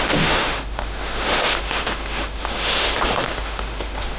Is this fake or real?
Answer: fake